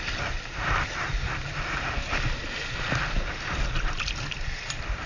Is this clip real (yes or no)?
yes